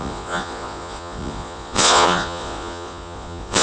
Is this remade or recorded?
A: remade